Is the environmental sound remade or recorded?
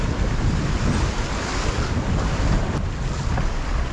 recorded